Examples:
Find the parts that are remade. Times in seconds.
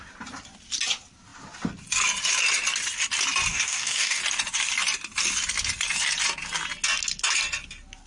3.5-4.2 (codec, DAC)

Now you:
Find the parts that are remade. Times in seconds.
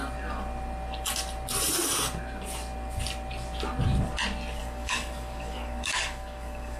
4.6-6.8 (codec, DAC)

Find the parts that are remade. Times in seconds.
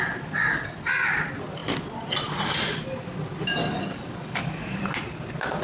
3.6-4.8 (codec, DAC)